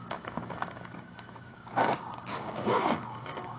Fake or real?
fake